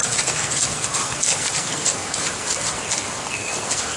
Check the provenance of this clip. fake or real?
fake